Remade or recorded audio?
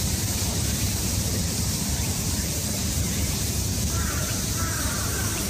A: remade